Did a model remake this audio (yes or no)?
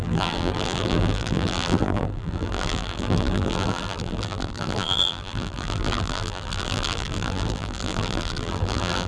yes